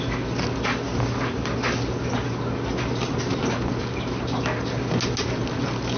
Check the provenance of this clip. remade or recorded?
recorded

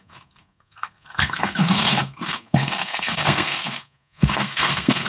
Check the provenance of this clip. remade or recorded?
remade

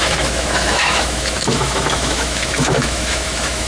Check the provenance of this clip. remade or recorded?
remade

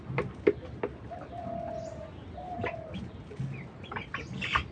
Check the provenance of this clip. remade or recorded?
recorded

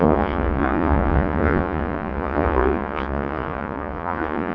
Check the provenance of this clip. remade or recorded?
remade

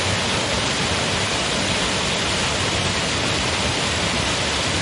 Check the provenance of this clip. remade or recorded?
recorded